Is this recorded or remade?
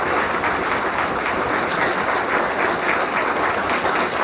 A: recorded